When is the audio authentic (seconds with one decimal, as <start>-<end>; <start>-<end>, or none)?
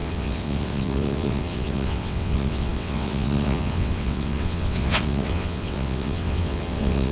none